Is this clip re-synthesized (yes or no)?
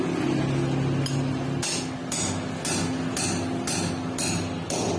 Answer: no